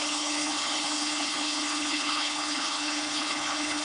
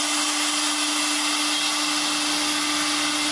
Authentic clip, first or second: second